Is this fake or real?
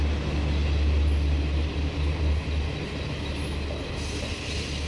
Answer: real